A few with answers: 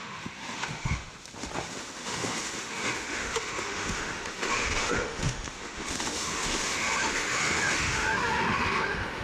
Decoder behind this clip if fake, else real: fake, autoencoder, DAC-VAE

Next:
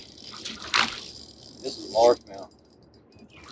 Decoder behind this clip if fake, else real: real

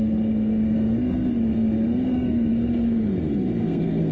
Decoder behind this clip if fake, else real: fake, codec, SNAC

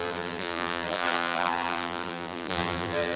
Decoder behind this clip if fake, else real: fake, vocoder, BigVGAN v2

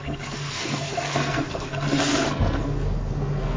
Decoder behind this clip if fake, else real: fake, codec, SNAC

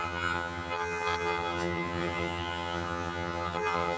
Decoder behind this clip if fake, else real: fake, vocoder, HiFi-GAN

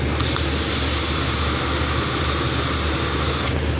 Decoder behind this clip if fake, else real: real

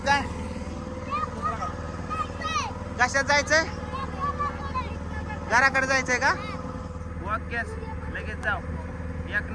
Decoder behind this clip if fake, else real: real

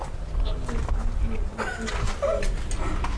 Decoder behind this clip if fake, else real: real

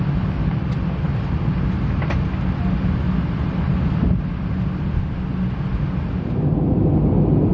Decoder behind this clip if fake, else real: real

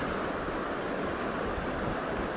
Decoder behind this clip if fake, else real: real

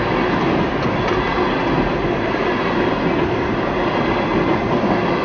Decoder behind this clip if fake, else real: real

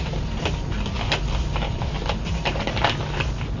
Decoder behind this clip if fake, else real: real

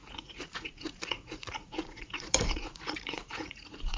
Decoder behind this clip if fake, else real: fake, vocoder, Vocos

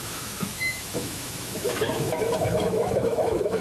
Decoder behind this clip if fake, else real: fake, autoencoder, DAC-VAE